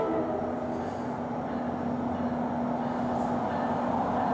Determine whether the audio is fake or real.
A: real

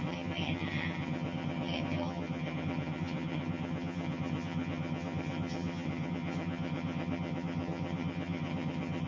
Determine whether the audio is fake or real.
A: fake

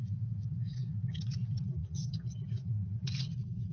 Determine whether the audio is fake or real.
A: fake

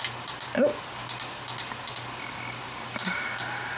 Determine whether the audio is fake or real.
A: real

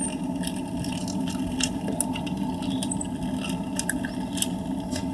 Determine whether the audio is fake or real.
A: real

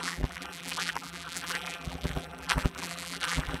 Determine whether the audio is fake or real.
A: fake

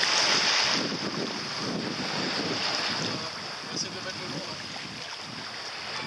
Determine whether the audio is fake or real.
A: real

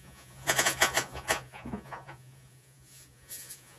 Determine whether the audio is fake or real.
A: fake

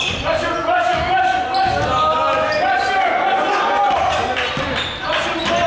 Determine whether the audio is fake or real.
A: real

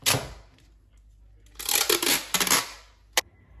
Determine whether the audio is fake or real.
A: real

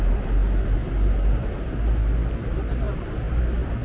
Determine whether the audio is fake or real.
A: real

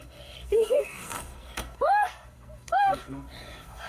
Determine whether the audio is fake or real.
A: fake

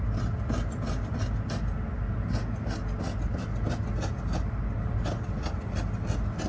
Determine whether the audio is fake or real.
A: real